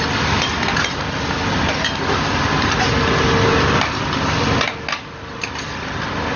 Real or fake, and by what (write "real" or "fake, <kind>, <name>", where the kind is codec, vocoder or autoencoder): real